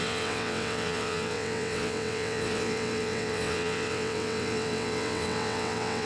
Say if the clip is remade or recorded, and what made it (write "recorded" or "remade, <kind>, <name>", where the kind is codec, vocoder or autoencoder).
remade, vocoder, WaveNeXt